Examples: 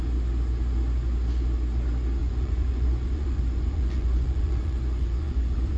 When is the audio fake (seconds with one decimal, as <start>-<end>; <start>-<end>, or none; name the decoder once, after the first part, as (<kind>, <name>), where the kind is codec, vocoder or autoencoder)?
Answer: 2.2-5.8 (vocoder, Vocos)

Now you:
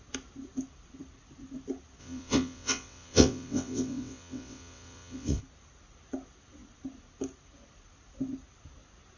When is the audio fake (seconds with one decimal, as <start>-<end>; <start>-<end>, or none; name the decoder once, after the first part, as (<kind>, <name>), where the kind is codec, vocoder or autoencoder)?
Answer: 2.0-5.4 (vocoder, WaveNeXt)

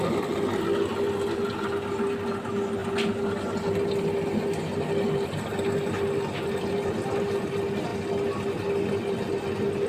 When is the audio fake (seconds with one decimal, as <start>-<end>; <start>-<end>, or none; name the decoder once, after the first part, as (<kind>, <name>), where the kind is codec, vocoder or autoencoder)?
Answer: none

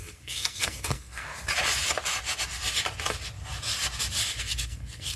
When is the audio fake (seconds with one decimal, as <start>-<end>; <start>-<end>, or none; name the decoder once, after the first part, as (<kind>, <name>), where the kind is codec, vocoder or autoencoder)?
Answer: 0.0-1.3 (codec, SNAC); 4.4-5.2